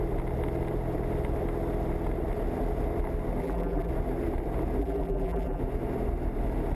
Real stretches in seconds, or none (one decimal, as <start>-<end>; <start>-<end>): 0.0-3.4; 3.9-4.8; 5.6-6.7

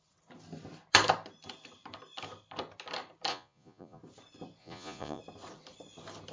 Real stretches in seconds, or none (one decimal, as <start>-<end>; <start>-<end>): 0.0-3.3; 4.0-4.6; 5.2-6.3

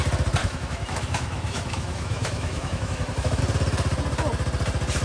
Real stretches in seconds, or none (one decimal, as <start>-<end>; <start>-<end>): 0.0-0.4; 3.4-5.0

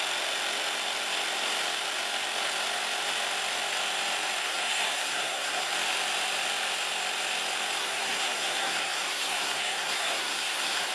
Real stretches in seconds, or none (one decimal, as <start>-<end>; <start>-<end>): 0.0-4.4; 5.7-7.8

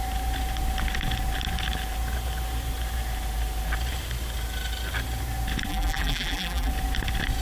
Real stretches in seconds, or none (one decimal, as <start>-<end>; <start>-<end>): 0.0-5.7; 6.7-7.4

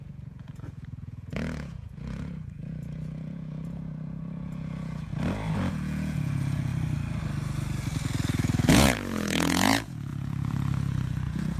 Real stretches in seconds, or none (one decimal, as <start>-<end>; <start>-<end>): 5.1-5.7; 6.7-8.7

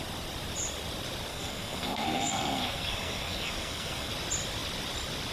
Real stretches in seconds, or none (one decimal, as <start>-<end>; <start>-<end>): 0.0-1.3; 4.1-5.3

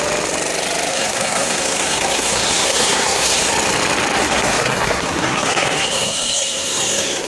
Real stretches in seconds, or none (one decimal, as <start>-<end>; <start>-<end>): 0.0-0.9; 3.5-4.2